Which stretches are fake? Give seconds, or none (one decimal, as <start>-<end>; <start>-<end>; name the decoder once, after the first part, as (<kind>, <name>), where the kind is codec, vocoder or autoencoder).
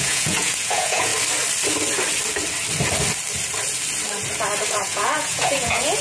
0.0-1.1 (vocoder, Vocos); 4.7-6.0